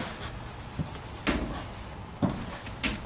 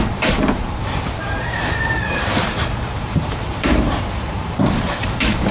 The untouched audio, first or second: first